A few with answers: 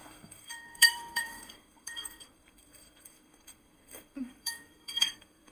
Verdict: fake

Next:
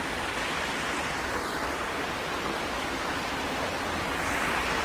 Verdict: real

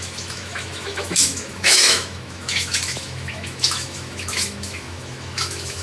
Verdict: fake